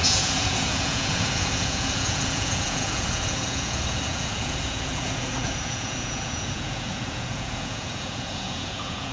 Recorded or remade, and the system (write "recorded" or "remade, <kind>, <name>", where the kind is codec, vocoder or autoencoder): remade, vocoder, Vocos